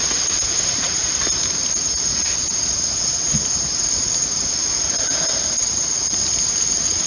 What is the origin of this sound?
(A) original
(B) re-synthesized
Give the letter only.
A